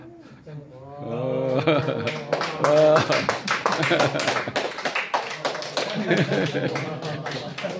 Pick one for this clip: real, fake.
real